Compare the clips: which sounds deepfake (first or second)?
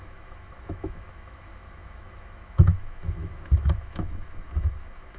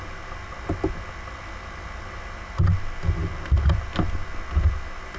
first